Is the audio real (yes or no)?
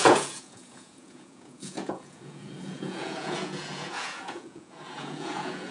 no